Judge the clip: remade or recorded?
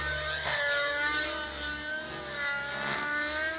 recorded